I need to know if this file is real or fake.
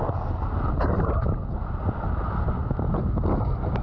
real